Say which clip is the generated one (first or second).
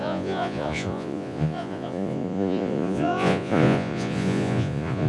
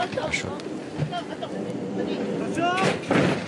first